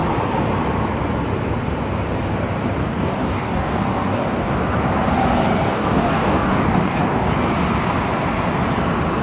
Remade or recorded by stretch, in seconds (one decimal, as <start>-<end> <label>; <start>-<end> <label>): 0.0-2.8 recorded; 2.8-4.5 remade; 4.5-5.7 recorded; 5.7-7.3 remade; 7.3-9.2 recorded